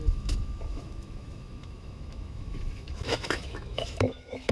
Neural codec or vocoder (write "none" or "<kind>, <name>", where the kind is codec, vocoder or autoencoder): autoencoder, DAC-VAE